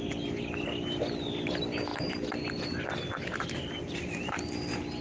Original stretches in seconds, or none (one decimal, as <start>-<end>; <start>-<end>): 0.0-5.0